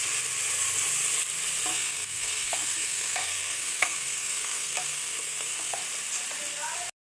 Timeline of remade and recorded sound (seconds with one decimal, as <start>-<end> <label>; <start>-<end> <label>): 0.0-1.7 recorded; 1.7-5.8 remade; 5.8-7.0 recorded